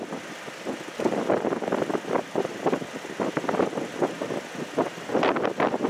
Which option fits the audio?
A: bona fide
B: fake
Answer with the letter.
A